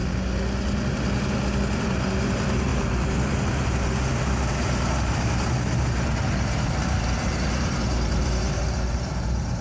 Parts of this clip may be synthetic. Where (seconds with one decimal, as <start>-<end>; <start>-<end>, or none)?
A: 1.8-9.6